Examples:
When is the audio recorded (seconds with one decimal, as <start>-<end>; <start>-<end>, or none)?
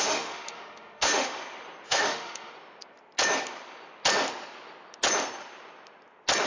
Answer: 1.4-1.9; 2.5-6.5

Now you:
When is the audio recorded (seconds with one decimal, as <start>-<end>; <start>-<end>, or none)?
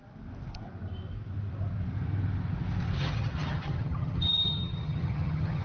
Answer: 0.0-3.0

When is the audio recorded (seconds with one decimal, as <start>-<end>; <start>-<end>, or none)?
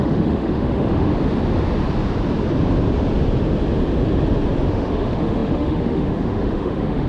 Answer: 1.1-4.7